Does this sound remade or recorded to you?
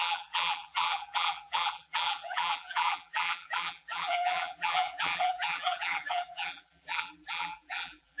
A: remade